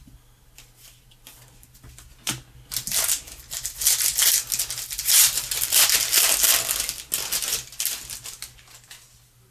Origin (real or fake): real